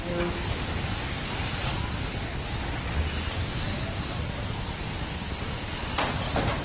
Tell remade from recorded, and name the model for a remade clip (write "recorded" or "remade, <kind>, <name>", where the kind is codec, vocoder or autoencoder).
recorded